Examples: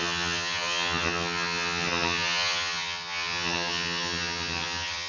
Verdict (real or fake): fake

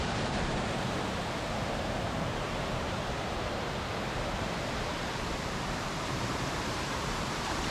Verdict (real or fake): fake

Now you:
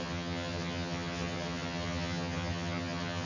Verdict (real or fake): fake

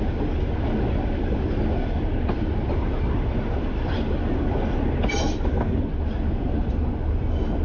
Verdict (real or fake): real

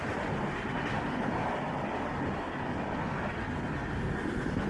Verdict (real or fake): real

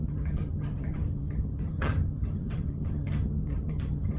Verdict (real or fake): fake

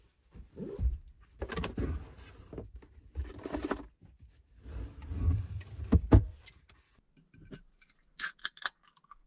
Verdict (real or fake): real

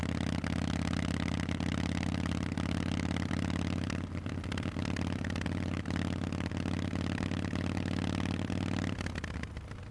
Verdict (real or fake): real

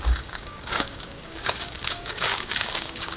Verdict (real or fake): fake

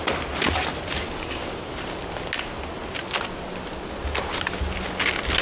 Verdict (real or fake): real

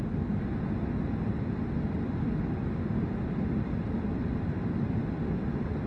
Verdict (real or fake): real